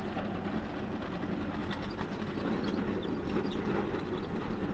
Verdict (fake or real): real